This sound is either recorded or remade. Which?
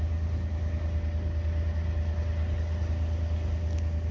recorded